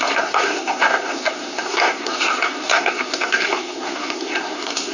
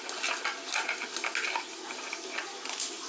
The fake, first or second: first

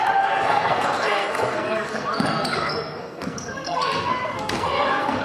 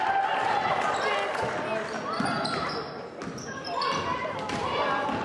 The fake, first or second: first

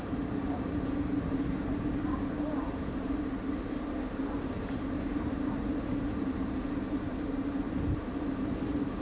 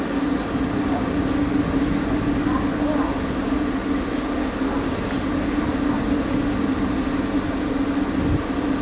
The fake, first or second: first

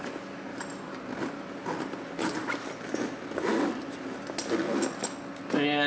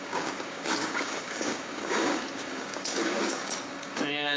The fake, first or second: second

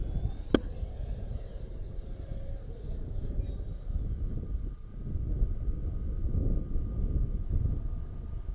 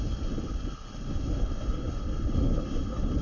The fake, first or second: second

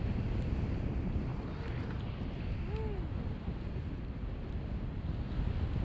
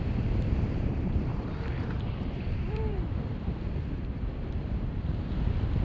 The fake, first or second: second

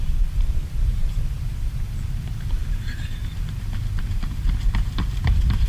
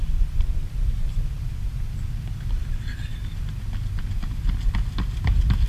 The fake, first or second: first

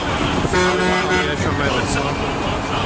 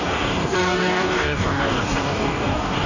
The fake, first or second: second